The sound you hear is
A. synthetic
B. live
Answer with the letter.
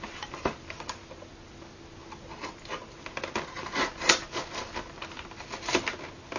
B